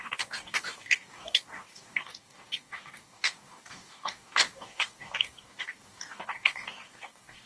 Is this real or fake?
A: fake